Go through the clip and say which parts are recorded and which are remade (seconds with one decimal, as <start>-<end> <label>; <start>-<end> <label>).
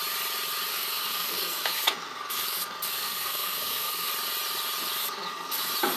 0.0-0.7 recorded; 0.7-4.1 remade; 4.1-5.0 recorded; 5.0-5.6 remade; 5.6-6.0 recorded